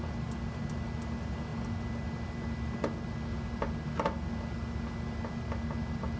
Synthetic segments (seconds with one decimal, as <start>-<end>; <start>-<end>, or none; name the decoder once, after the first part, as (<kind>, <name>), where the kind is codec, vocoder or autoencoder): none